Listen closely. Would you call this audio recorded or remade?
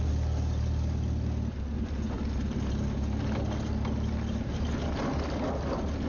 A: recorded